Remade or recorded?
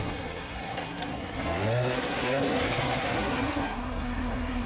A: remade